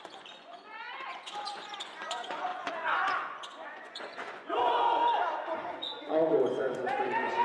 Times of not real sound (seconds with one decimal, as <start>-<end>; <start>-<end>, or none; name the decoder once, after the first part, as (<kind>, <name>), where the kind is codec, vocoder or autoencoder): 0.0-5.0 (vocoder, Vocos); 5.7-7.4